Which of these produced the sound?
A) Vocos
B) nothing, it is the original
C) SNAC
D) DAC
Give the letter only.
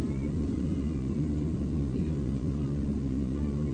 A